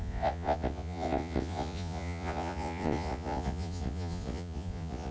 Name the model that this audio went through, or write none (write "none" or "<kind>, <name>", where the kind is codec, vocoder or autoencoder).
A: vocoder, Vocos